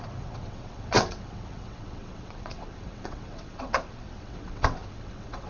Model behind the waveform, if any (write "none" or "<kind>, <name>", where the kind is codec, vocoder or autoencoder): vocoder, WaveNeXt